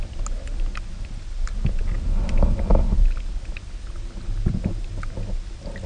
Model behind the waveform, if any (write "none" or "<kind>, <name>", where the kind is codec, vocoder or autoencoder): none